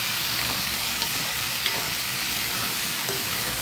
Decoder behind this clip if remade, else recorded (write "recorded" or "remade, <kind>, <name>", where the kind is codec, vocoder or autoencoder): remade, codec, DAC